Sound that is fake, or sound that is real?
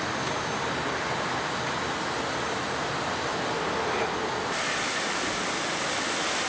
real